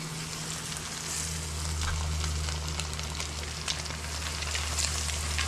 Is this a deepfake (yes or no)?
no